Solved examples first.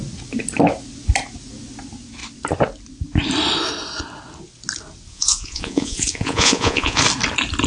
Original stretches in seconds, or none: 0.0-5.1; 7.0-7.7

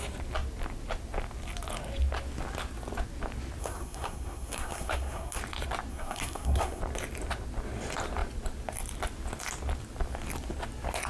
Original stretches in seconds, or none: 0.0-3.6; 5.4-5.9; 6.8-11.1

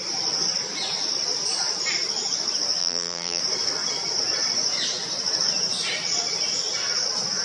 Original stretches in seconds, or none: 0.0-2.8; 3.4-7.4